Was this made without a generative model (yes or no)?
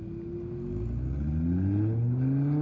yes